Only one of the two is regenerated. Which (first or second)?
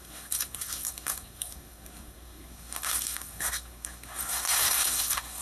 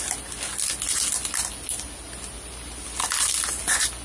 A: first